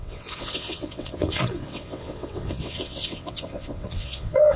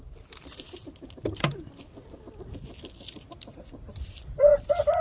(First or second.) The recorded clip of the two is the second